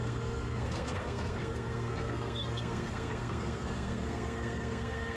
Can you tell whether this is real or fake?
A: fake